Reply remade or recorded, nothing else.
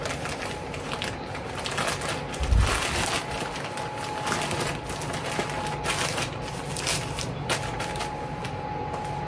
recorded